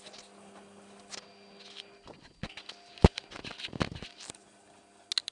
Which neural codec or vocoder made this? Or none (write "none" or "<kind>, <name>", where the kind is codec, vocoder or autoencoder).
none